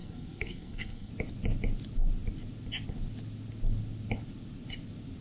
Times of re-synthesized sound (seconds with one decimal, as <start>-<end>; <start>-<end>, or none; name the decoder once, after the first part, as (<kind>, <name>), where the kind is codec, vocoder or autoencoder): 0.0-1.1 (codec, SNAC)